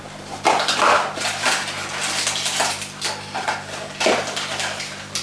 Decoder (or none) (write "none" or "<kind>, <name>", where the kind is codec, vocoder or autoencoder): none